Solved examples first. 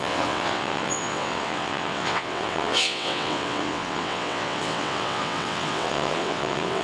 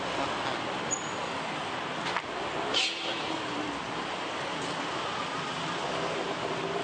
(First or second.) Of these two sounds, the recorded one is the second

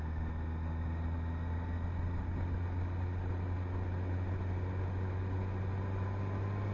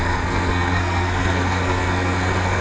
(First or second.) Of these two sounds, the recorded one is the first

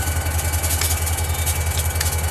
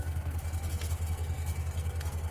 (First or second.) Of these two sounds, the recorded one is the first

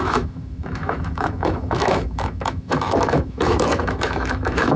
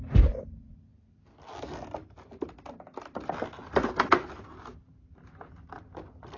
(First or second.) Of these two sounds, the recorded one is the second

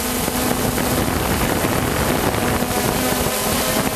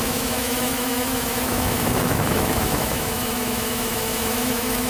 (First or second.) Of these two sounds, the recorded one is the first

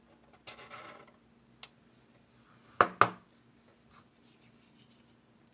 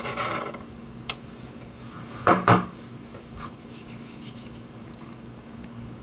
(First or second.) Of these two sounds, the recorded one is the first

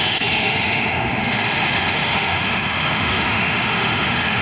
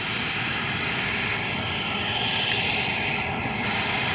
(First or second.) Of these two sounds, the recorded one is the second